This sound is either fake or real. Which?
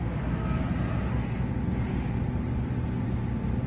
real